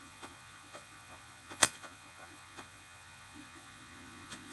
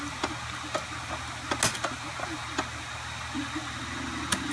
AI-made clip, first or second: first